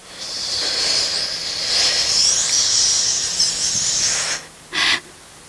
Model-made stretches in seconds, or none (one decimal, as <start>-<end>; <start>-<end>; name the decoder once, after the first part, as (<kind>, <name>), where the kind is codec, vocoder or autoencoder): 0.0-1.2 (vocoder, BigVGAN v2)